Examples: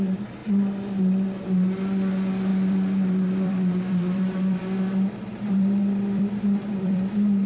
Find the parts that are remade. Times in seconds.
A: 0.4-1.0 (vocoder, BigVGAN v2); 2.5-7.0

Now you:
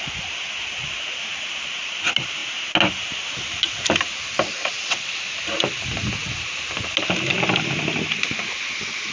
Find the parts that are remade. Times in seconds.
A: 4.6-5.2 (vocoder, WaveNeXt)

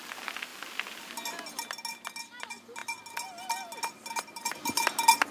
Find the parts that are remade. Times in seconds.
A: none

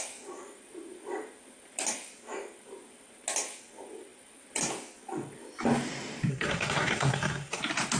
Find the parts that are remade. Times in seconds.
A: 6.3-7.6 (codec, SNAC)

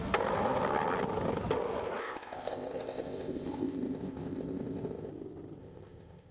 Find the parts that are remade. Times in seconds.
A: 2.0-5.1 (codec, ZipCodec); 5.6-6.3

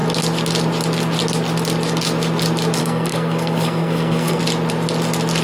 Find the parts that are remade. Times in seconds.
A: 2.8-4.4 (codec, SNAC)